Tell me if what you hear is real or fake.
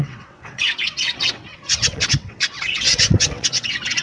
fake